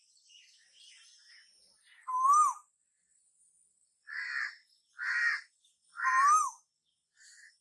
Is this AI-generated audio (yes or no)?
no